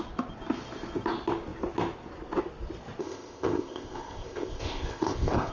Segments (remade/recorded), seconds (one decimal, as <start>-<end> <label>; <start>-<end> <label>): 0.0-3.0 recorded; 3.0-5.5 remade